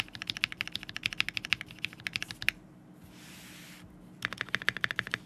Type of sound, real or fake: real